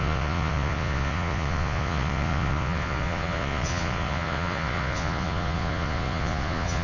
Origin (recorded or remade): remade